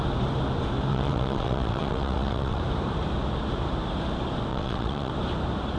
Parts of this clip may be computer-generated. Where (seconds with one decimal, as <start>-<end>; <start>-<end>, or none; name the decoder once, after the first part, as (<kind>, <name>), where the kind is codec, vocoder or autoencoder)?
0.9-2.6 (vocoder, WaveNeXt); 4.5-5.1